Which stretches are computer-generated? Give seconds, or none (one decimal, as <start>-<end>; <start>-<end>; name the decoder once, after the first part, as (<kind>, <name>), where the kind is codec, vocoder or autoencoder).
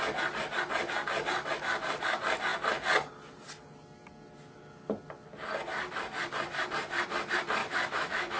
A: 7.6-8.4 (autoencoder, DAC-VAE)